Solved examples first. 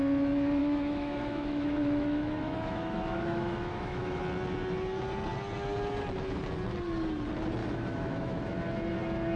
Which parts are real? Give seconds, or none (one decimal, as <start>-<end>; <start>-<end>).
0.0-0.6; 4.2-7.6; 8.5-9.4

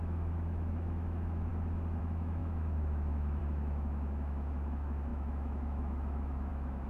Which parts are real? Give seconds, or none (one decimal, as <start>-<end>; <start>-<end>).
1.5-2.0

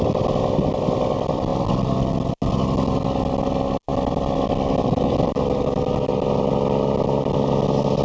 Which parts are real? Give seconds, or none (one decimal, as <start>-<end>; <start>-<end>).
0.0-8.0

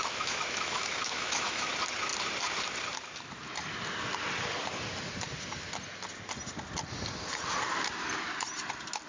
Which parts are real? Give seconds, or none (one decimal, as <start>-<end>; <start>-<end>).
1.7-9.1

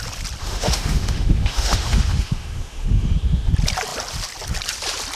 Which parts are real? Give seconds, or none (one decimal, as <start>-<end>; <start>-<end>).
0.0-0.4; 3.5-5.1

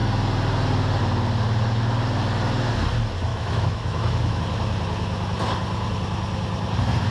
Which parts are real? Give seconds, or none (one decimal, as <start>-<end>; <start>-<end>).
0.0-3.3; 4.4-7.1

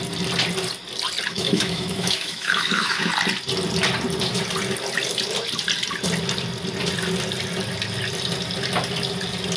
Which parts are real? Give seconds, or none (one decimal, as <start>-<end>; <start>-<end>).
0.0-1.3; 3.1-9.6